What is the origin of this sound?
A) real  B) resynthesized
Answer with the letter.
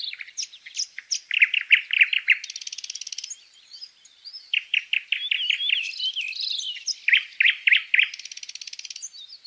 A